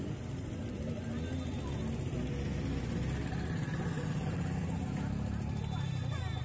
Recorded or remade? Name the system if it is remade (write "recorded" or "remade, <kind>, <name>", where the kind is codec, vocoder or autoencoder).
recorded